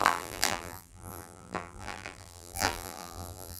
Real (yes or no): no